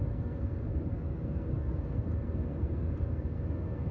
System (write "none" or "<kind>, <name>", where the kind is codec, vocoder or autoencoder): codec, SNAC